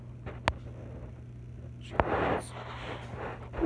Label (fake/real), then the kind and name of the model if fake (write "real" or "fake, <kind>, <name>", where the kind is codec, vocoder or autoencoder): real